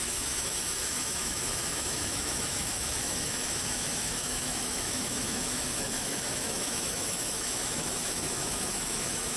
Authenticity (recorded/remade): remade